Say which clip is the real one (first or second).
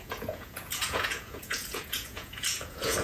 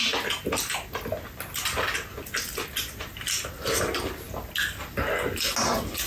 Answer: second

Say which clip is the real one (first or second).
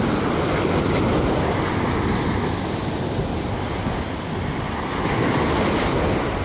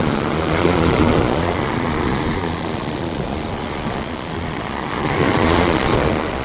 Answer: first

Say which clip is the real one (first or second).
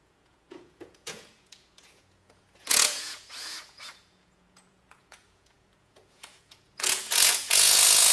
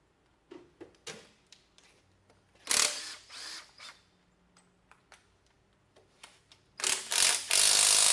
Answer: second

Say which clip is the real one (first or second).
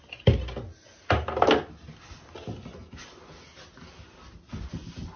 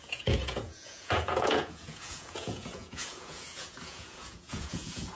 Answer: first